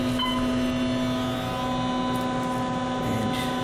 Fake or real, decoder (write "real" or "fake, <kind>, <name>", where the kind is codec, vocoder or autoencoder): real